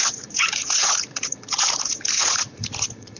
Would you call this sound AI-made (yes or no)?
yes